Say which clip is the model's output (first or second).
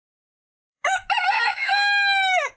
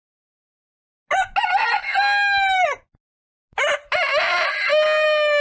first